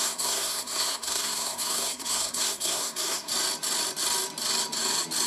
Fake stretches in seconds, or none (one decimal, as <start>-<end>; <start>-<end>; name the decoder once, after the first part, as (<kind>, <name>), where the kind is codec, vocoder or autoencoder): 0.0-3.3 (codec, SNAC)